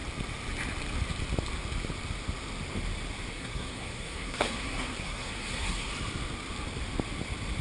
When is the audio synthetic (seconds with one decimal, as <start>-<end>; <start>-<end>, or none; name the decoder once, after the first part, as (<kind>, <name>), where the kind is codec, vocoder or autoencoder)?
3.3-5.9 (codec, SNAC)